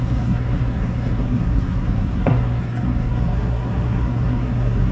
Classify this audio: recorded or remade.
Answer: remade